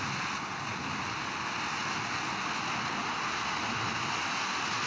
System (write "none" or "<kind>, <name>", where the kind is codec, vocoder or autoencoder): none